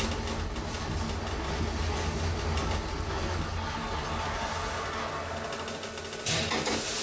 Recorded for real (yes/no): yes